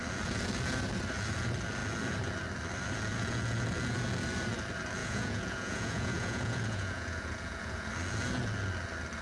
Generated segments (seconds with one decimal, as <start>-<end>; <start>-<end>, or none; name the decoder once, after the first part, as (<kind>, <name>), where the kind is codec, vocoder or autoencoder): 5.0-7.9 (vocoder, Vocos)